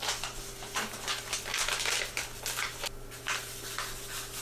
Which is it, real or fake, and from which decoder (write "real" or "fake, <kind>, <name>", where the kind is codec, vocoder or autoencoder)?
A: real